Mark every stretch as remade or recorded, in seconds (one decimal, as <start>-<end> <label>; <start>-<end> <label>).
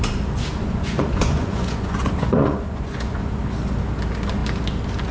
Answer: 0.0-0.6 recorded; 0.6-3.4 remade; 3.4-5.1 recorded